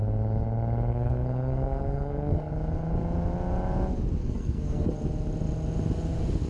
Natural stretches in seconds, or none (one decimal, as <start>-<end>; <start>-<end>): 0.0-0.9; 2.5-4.2; 4.9-6.5